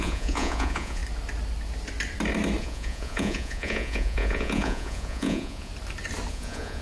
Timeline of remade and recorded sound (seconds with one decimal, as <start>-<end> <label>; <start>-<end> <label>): 0.0-1.0 remade; 1.0-2.6 recorded; 2.6-5.7 remade; 5.7-6.3 recorded; 6.3-6.8 remade